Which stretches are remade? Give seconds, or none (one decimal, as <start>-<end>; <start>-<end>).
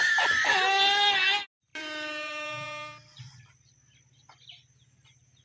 1.7-3.2